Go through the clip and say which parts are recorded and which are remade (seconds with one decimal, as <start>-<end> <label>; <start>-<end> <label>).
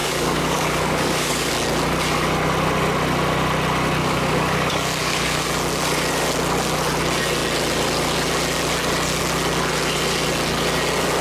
0.0-1.5 remade; 1.5-4.0 recorded; 4.0-5.5 remade; 5.5-11.2 recorded